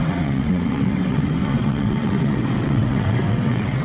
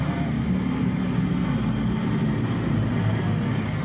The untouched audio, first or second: second